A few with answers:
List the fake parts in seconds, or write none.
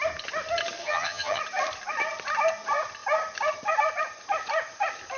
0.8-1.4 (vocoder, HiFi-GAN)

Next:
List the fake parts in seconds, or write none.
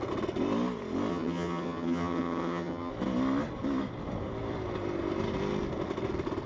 1.1-2.9 (vocoder, HiFi-GAN)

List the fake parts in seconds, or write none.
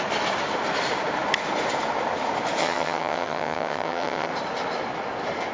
2.6-4.3 (vocoder, HiFi-GAN)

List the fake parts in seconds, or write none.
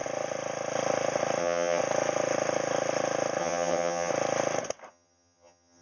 1.4-1.8 (vocoder, HiFi-GAN); 3.4-4.1; 4.9-5.8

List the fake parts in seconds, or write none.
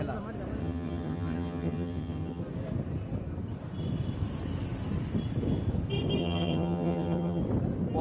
0.6-2.4 (vocoder, HiFi-GAN); 6.2-7.4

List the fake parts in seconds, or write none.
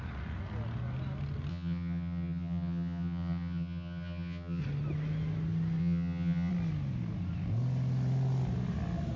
1.5-4.6 (vocoder, HiFi-GAN); 5.8-6.5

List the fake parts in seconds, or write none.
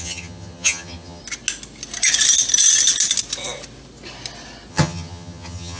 0.0-1.2 (vocoder, HiFi-GAN); 4.7-5.8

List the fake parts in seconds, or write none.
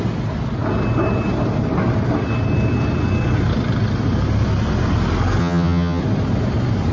5.4-6.0 (vocoder, HiFi-GAN)